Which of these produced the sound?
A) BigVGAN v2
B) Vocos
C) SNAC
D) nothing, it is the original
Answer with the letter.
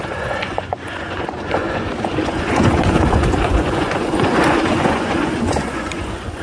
B